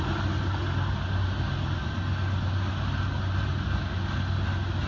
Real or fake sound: real